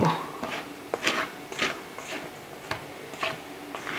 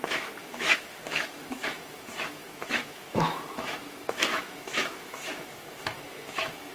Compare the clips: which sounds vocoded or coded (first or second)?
second